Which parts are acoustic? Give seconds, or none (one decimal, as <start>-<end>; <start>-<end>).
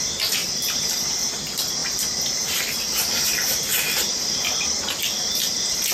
0.0-1.8; 2.4-3.7; 4.8-5.9